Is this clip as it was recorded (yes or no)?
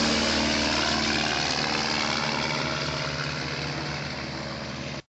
yes